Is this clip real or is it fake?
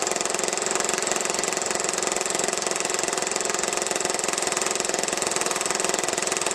fake